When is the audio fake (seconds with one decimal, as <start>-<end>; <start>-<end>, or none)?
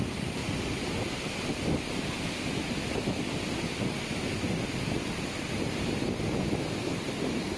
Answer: none